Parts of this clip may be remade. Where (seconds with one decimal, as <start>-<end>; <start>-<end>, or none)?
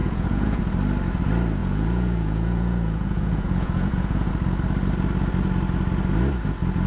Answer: 0.0-0.6; 1.6-4.3